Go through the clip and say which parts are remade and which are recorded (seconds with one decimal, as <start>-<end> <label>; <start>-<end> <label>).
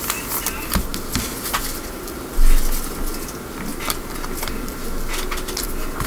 0.0-6.1 recorded